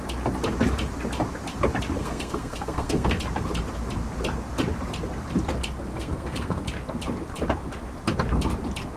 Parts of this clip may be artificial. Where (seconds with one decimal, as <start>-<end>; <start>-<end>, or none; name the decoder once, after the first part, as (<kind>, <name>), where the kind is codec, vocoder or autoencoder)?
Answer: 2.0-3.2 (codec, SNAC); 5.9-6.6